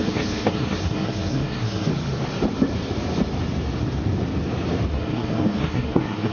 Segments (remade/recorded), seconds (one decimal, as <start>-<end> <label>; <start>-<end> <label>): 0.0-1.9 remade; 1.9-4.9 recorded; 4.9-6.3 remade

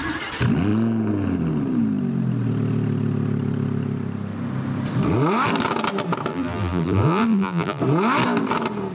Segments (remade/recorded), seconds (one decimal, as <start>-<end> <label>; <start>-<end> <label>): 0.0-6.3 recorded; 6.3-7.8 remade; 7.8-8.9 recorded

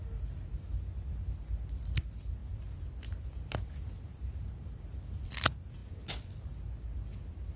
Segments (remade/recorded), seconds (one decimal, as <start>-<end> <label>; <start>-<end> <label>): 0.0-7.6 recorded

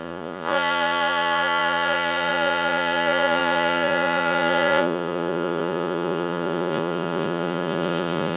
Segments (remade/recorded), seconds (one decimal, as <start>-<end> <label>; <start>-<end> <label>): 0.0-8.4 remade

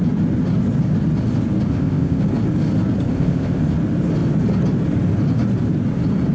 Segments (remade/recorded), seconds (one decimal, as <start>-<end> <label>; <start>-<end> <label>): 0.0-1.7 recorded; 1.7-2.2 remade; 2.2-3.1 recorded; 3.1-3.6 remade; 3.6-6.3 recorded